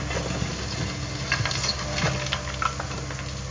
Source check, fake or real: real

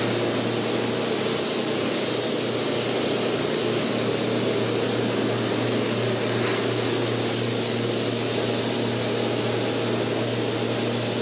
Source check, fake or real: real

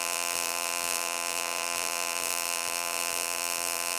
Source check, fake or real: fake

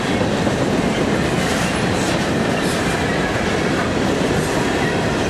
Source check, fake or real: real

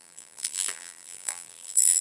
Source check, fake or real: fake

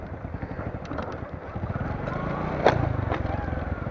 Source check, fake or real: fake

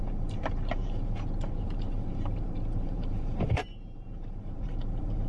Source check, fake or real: fake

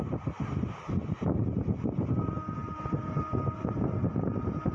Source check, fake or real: fake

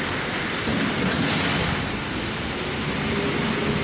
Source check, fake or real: real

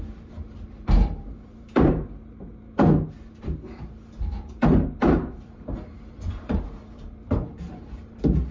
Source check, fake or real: fake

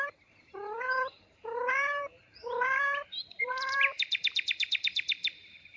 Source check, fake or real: fake